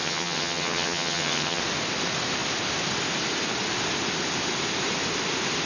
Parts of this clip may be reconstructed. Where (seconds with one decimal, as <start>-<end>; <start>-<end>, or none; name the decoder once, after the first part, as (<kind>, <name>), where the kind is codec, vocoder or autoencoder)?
0.0-1.6 (vocoder, HiFi-GAN)